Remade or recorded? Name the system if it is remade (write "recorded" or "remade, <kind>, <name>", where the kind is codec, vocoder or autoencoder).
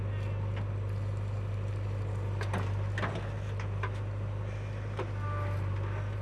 recorded